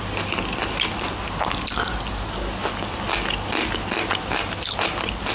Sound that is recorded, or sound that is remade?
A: recorded